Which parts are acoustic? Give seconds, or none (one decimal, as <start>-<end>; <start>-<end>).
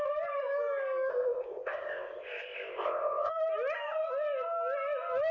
0.0-1.1; 3.3-5.3